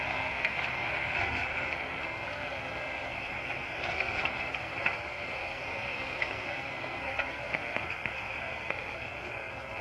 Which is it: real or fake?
fake